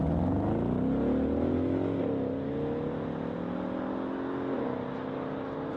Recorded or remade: recorded